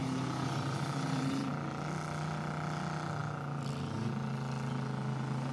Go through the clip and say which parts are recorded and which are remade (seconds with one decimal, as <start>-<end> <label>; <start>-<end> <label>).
0.0-1.5 remade; 1.5-5.5 recorded